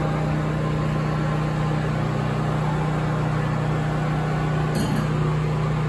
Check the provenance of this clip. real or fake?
real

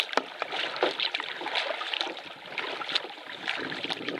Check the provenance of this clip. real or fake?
real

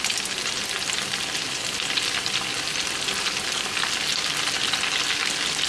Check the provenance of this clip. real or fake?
real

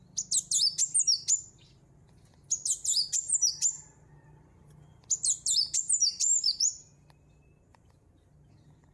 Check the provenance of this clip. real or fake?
real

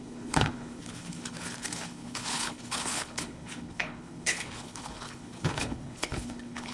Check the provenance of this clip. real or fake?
fake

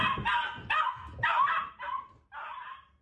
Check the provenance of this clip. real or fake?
real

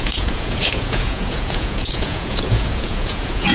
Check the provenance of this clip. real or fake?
fake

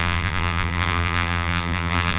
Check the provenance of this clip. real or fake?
fake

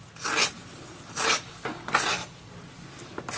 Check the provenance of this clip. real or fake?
real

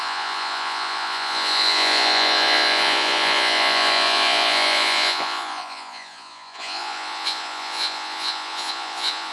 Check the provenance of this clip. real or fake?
fake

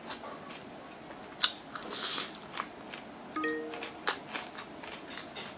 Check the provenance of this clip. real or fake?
real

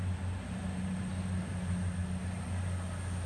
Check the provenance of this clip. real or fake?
real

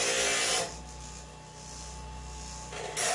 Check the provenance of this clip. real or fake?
real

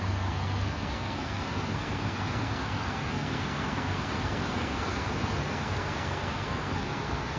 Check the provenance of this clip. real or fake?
fake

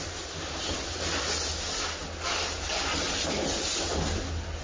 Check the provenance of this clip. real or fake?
real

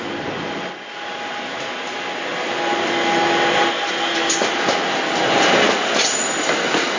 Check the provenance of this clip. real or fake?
real